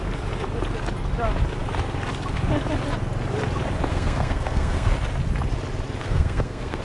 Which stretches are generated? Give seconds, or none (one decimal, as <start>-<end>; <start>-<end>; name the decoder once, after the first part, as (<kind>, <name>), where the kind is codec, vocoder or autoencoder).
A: 3.9-4.9 (codec, SNAC); 6.0-6.8